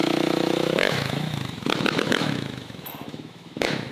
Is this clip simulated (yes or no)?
yes